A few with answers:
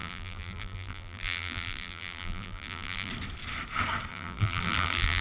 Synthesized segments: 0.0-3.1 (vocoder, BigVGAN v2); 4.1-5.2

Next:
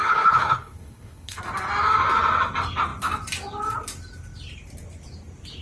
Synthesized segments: 0.0-1.4 (codec, HILCodec)

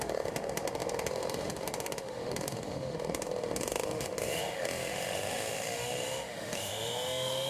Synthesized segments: 0.0-7.5 (autoencoder, DAC-VAE)

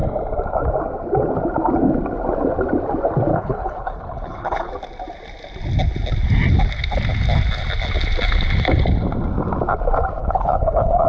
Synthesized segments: 3.3-4.7 (codec, HILCodec); 10.2-11.1

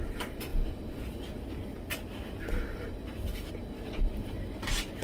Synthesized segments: none

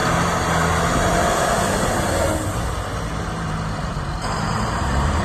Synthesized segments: 3.1-5.2 (vocoder, BigVGAN v2)